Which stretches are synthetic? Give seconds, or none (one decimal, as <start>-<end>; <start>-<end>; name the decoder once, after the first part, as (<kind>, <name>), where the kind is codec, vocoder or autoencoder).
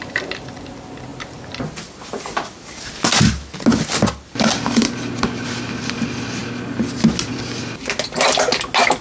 none